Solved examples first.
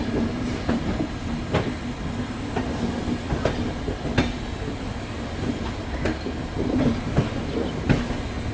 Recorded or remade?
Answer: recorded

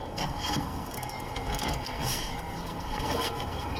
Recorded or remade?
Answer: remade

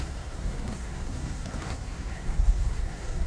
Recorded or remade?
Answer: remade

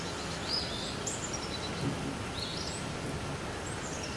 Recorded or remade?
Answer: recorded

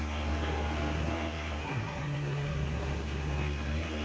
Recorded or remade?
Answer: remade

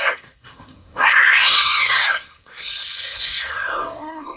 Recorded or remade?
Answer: remade